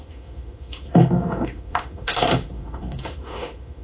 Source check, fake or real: fake